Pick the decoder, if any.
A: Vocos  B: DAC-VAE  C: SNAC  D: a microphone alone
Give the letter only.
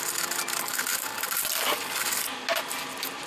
D